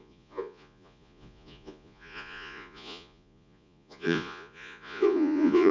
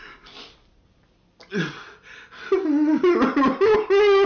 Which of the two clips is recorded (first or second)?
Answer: second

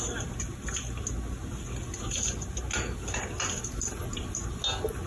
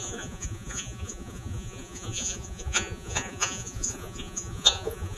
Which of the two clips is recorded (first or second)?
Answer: first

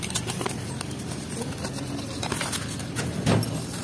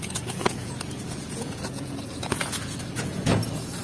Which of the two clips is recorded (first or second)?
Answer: first